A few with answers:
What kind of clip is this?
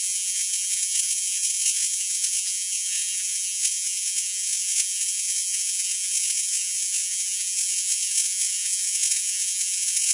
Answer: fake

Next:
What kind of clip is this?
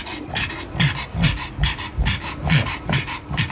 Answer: real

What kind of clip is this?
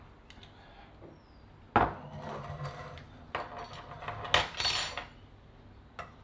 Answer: real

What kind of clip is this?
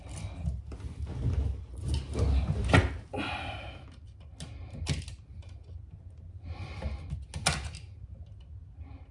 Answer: real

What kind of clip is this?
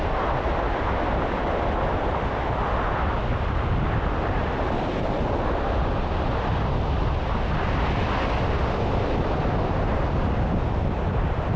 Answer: real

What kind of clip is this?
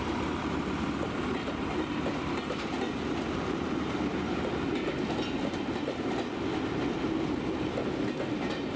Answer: real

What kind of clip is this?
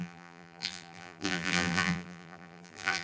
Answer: fake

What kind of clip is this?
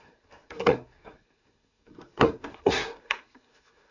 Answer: fake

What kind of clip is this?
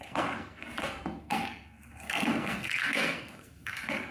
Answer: fake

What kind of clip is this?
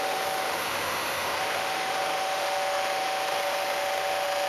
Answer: fake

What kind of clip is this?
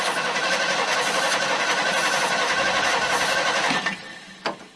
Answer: real